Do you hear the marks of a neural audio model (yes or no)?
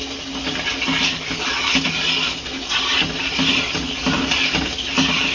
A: no